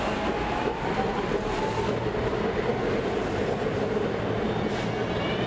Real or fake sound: real